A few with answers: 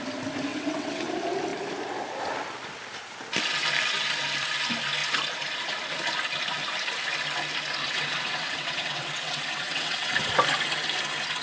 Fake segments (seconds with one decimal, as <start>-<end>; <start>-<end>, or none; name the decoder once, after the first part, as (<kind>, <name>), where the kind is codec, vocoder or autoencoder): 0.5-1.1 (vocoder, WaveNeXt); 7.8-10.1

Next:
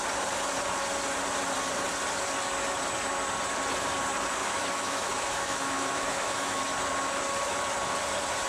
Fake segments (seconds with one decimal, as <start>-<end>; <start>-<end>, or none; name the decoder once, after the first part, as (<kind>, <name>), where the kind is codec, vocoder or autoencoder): 4.4-6.6 (autoencoder, DAC-VAE)

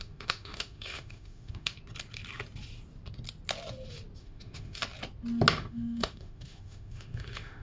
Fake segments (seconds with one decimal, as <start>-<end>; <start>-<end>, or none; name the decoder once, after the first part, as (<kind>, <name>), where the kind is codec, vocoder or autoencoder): 0.0-1.7 (autoencoder, DAC-VAE); 4.2-4.8; 5.5-7.6